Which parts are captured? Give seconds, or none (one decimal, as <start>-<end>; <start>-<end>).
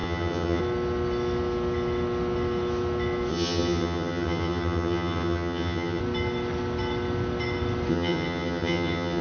0.6-3.3; 6.0-7.9